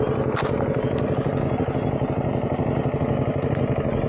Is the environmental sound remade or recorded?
recorded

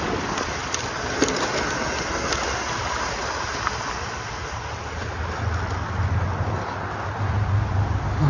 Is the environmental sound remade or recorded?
recorded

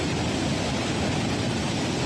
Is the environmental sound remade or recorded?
remade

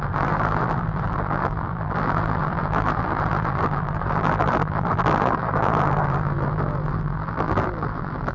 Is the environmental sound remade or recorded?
remade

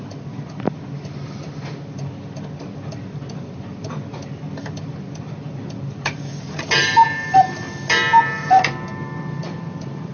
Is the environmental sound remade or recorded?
remade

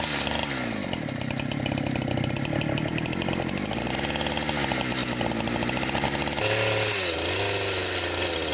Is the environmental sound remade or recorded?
recorded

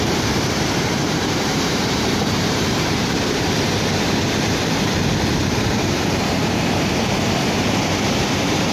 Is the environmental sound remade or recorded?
remade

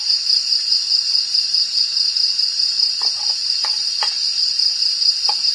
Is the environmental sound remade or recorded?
recorded